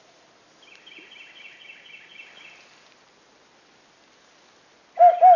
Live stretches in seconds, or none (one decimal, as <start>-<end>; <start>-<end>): 0.0-5.4